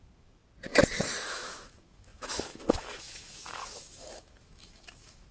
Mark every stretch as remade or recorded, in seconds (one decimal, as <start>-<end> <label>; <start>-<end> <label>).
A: 0.0-0.4 remade; 0.4-1.2 recorded; 1.2-5.3 remade